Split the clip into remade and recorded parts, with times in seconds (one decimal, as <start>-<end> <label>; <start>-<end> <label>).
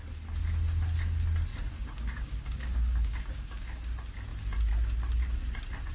0.0-1.5 recorded; 1.5-3.8 remade; 3.8-5.9 recorded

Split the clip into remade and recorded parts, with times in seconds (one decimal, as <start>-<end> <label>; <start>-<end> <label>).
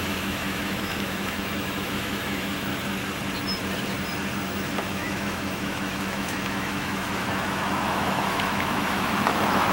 0.0-2.7 remade; 2.7-4.9 recorded; 4.9-9.7 remade